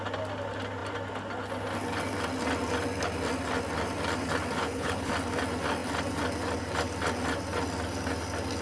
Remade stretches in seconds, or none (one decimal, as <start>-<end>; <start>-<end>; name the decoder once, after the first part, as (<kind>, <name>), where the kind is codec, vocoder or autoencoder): 4.6-5.1 (codec, HILCodec)